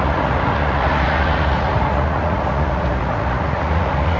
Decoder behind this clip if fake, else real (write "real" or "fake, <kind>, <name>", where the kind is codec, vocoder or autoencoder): fake, vocoder, Vocos